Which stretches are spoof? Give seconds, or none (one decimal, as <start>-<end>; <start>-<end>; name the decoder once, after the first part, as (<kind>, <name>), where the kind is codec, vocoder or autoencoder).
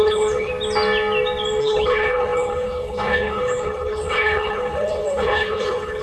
0.0-0.5 (codec, HILCodec); 1.6-6.0